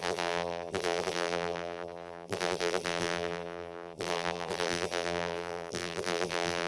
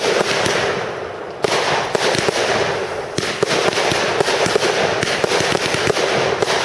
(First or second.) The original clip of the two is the second